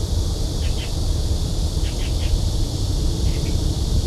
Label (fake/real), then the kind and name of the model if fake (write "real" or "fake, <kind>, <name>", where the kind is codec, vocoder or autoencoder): fake, vocoder, BigVGAN v2